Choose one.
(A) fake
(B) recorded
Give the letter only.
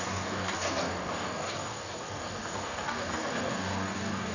A